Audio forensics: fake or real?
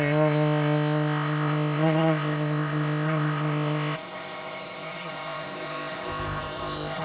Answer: fake